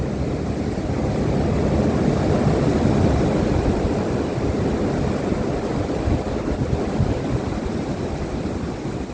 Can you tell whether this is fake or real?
real